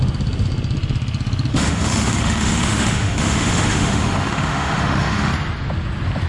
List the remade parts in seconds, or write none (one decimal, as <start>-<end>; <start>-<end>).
1.5-5.3